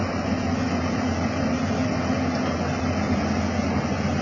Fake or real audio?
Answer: real